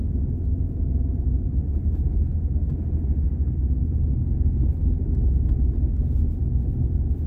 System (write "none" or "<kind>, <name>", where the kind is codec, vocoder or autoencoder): none